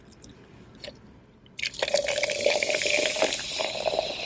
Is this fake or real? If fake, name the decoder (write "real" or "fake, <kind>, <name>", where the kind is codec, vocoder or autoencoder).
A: real